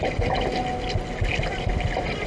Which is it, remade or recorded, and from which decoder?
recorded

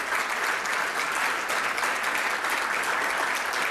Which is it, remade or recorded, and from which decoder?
recorded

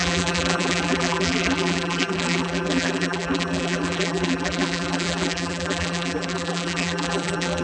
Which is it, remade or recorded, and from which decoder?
remade, vocoder, BigVGAN v2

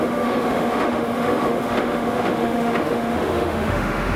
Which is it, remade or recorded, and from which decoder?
remade, autoencoder, DAC-VAE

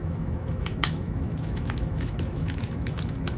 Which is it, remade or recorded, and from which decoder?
remade, autoencoder, DAC-VAE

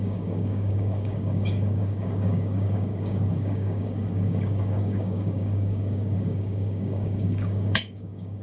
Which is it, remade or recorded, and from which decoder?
remade, codec, DAC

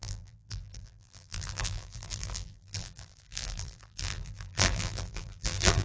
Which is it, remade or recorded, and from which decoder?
remade, vocoder, BigVGAN v2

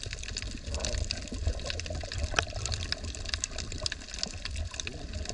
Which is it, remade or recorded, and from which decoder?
recorded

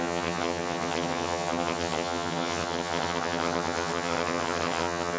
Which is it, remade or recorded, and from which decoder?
remade, vocoder, HiFi-GAN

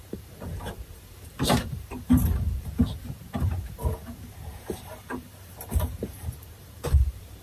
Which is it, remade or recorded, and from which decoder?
remade, vocoder, BigVGAN v2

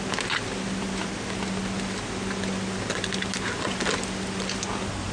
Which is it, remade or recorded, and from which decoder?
recorded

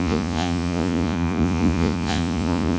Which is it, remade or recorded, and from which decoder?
remade, vocoder, Vocos